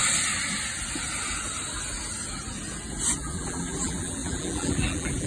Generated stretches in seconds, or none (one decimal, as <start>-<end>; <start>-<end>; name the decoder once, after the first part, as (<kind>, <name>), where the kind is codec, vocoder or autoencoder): 3.2-5.3 (vocoder, BigVGAN v2)